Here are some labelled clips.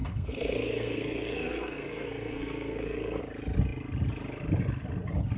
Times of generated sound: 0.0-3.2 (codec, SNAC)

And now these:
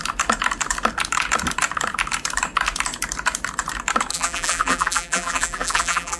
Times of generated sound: 4.1-6.2 (vocoder, BigVGAN v2)

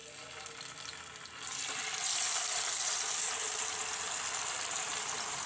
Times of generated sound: 0.0-3.8 (vocoder, BigVGAN v2); 4.4-5.5

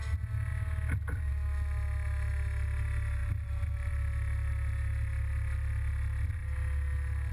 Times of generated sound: 3.2-3.9 (vocoder, BigVGAN v2)

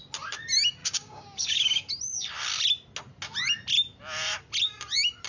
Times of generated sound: 0.8-1.9 (codec, DAC)

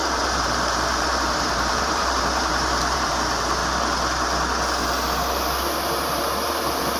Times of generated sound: 0.0-3.6 (vocoder, BigVGAN v2); 6.0-7.0

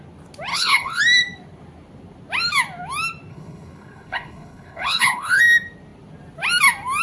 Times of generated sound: 0.5-1.0 (codec, HILCodec); 3.3-5.4